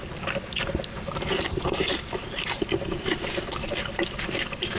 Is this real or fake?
fake